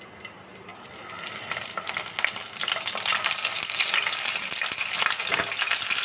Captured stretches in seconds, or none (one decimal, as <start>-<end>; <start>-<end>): 0.0-0.7; 2.0-6.0